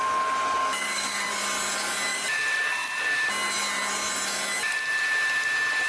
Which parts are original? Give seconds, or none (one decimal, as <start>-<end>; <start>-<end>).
0.0-0.6; 1.3-5.9